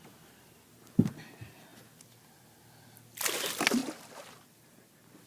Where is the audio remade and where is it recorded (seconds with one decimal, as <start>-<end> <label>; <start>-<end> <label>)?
0.0-5.3 recorded